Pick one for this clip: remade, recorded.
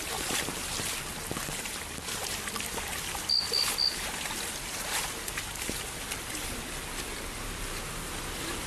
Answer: recorded